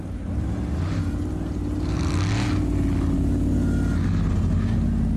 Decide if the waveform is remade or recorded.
recorded